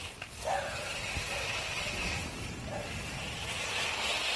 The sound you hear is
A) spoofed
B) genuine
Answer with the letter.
B